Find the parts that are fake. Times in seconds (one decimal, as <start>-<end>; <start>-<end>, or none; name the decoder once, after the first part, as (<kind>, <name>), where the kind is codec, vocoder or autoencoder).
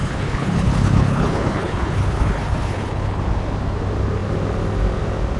0.0-3.2 (codec, HILCodec)